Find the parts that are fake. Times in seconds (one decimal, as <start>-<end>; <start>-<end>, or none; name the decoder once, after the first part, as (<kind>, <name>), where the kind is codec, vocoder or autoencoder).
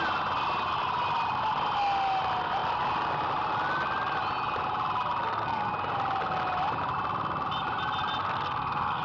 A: 5.2-5.7 (codec, SNAC); 8.2-9.0